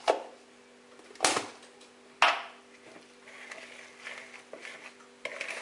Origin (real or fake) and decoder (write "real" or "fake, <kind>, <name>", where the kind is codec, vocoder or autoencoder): real